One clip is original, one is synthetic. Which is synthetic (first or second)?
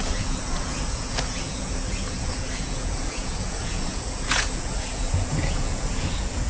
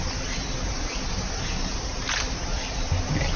first